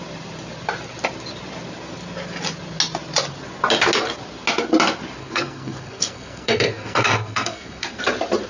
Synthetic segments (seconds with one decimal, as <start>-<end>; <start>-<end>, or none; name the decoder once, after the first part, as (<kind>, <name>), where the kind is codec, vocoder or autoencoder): 5.2-8.0 (codec, SNAC)